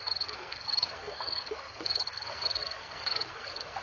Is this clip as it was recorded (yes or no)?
no